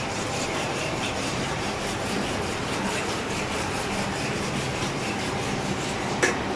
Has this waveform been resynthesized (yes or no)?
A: yes